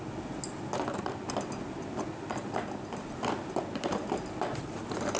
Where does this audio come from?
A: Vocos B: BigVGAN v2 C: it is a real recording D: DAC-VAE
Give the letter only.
C